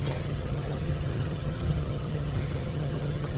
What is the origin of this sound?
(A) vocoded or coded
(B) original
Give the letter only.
A